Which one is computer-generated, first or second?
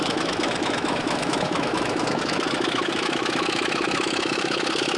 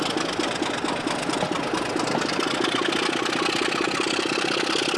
first